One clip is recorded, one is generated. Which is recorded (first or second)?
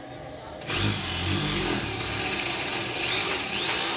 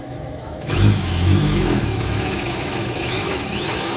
first